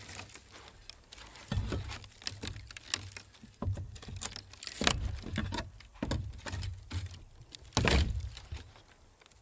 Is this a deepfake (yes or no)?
no